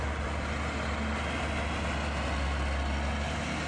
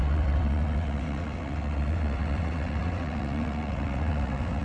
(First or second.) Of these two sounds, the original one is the first